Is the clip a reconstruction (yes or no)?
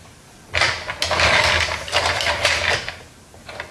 no